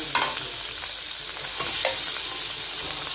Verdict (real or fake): real